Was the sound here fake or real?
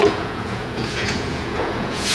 fake